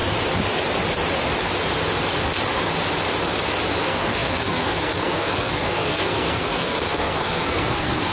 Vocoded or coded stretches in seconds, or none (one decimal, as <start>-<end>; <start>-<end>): 3.8-8.1